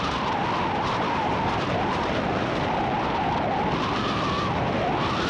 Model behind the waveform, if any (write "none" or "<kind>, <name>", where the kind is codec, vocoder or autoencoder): none